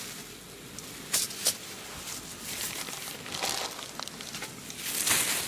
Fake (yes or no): no